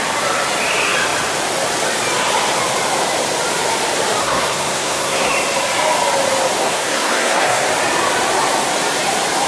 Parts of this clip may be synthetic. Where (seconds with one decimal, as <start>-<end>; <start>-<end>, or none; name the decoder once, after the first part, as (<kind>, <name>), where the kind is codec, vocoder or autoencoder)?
4.2-5.3 (codec, SNAC); 6.6-7.7